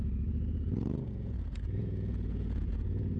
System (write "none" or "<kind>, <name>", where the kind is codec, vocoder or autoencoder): vocoder, Vocos